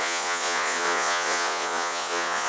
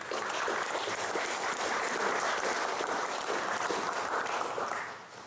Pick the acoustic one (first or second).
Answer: second